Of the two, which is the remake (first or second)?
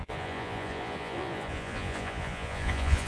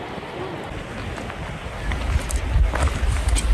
first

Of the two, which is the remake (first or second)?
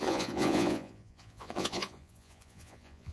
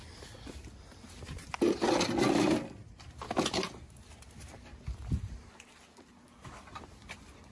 first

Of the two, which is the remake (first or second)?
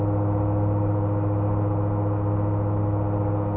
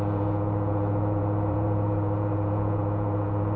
second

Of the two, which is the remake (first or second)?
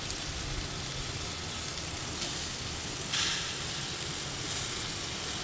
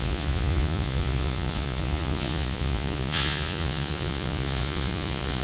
second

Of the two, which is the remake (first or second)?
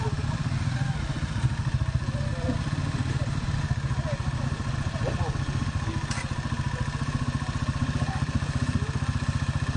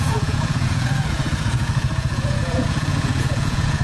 second